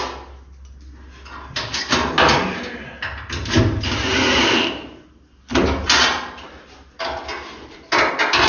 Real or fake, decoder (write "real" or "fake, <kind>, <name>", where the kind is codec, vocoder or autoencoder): real